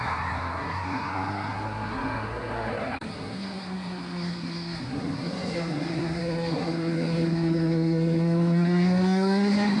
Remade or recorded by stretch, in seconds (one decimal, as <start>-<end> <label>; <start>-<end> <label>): 0.0-9.8 remade